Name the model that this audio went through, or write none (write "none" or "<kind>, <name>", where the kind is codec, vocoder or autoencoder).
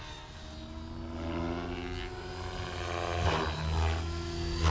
none